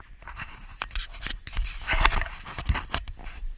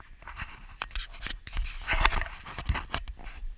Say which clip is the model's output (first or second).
first